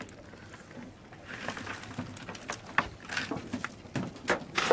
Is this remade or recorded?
recorded